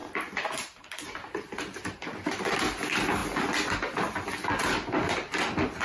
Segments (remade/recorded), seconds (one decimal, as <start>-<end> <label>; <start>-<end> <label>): 0.0-2.6 remade; 2.6-5.8 recorded